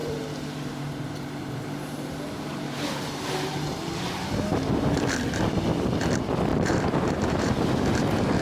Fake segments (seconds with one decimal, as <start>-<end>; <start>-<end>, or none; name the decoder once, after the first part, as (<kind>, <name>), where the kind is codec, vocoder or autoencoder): 0.0-5.0 (vocoder, BigVGAN v2); 6.5-7.7